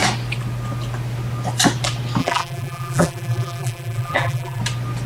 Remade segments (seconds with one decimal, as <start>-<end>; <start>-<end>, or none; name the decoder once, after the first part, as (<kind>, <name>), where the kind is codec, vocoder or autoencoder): 2.2-4.6 (vocoder, BigVGAN v2)